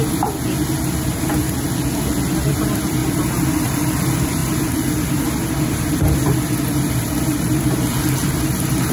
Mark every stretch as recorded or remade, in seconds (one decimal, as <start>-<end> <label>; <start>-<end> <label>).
0.0-4.4 remade; 4.4-5.2 recorded; 5.2-8.9 remade